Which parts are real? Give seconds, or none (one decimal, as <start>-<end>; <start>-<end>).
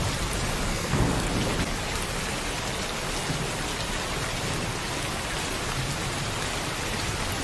0.0-0.7; 1.3-7.4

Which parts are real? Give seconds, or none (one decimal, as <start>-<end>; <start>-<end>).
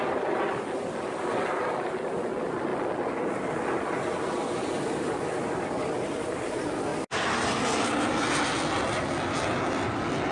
0.0-10.3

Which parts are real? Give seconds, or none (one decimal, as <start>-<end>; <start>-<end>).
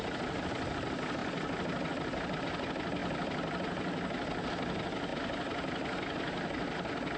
0.0-7.2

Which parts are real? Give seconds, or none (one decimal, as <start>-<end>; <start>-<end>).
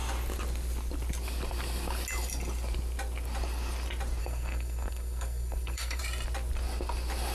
0.0-4.2; 6.0-7.3